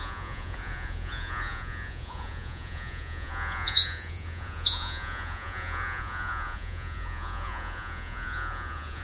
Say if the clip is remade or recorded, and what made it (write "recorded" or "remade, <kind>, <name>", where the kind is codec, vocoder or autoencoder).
remade, vocoder, Vocos